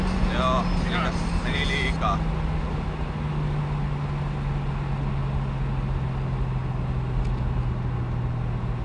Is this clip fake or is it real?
real